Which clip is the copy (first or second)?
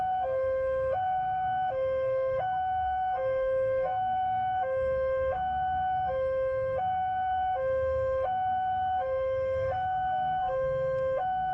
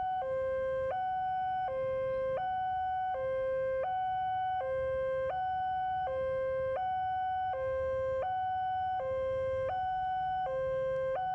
first